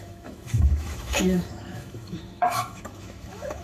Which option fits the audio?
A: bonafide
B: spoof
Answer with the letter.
B